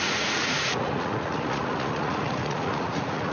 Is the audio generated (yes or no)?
yes